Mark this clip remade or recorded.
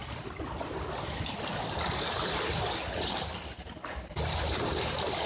recorded